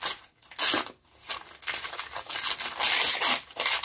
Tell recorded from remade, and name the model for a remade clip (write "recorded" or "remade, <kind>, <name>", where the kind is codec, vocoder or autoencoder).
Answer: recorded